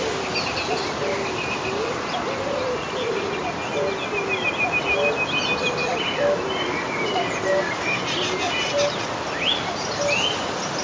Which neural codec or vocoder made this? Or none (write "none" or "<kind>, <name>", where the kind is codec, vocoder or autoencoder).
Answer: none